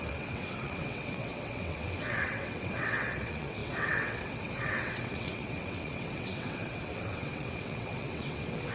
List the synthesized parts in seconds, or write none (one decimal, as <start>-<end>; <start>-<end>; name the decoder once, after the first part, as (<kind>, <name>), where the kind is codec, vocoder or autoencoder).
0.0-8.7 (vocoder, WaveNeXt)